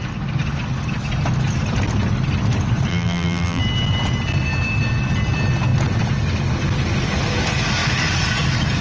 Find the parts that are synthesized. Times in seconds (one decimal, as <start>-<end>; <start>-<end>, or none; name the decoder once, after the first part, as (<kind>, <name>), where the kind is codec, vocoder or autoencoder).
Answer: 2.9-3.6 (vocoder, BigVGAN v2)